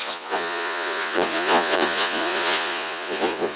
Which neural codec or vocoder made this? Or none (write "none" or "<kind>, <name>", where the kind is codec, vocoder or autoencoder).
vocoder, Vocos